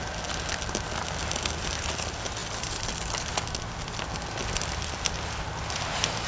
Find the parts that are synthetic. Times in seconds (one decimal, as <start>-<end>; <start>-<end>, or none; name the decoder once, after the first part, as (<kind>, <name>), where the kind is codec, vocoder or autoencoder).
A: none